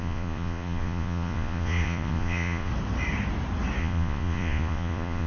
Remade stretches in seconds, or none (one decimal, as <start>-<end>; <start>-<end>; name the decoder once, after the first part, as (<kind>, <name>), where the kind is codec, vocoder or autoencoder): 0.0-2.7 (vocoder, Vocos); 3.8-5.3